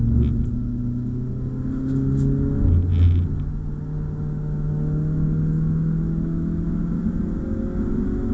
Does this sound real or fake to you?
real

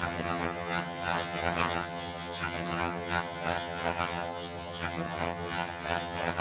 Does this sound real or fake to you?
fake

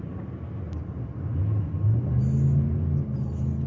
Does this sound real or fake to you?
real